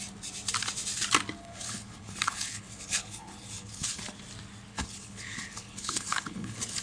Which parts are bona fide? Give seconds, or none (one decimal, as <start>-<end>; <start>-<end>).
0.0-1.4; 4.0-4.7